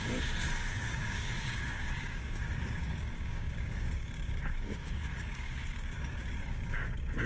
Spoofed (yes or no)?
yes